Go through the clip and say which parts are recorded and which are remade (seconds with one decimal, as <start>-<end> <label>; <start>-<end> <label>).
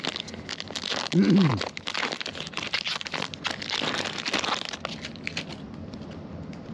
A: 0.0-6.7 recorded